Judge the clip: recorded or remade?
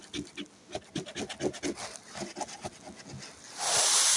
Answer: recorded